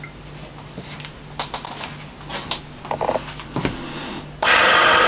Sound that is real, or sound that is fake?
real